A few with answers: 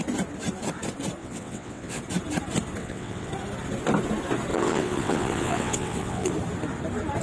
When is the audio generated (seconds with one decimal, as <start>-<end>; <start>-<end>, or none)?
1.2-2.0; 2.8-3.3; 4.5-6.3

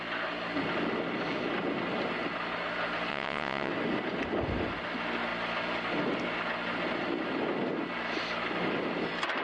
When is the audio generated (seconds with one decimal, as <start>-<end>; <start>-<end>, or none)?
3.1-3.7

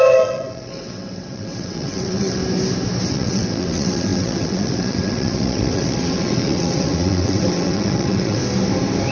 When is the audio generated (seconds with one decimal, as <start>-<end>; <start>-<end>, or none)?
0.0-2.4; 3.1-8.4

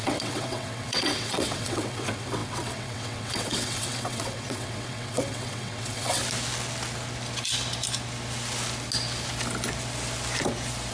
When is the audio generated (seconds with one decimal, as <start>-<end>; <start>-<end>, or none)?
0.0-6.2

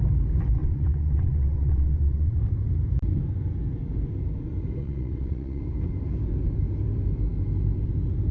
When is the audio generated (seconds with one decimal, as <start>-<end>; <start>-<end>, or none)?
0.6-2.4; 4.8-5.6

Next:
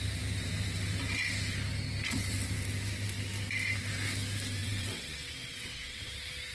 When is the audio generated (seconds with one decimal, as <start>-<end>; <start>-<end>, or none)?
4.6-6.1